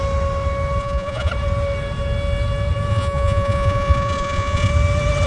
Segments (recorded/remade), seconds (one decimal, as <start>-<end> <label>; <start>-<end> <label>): 0.0-0.8 recorded; 0.8-1.3 remade; 1.3-2.9 recorded; 2.9-4.7 remade; 4.7-5.3 recorded